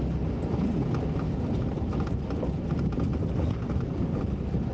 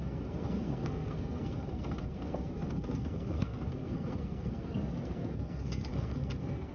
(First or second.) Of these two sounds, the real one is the first